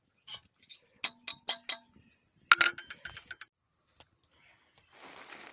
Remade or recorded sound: recorded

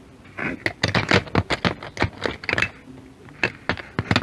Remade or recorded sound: recorded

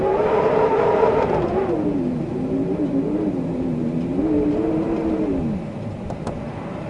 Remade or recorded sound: recorded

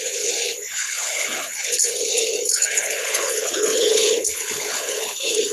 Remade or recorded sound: remade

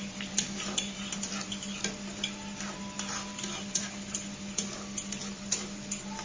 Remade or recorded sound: recorded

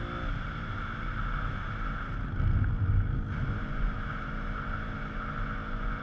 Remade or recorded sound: recorded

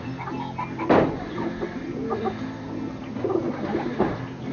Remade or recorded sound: recorded